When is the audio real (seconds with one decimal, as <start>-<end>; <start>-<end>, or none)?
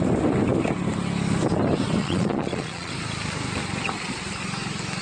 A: 0.0-2.0; 2.9-5.0